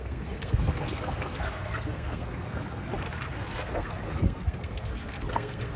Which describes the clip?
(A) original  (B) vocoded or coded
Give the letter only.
B